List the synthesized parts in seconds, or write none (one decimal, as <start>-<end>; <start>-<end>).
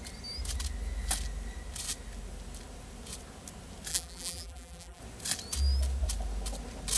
3.9-5.0